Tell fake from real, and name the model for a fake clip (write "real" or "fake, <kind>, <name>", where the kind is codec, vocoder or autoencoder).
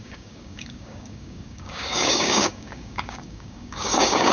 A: fake, codec, DAC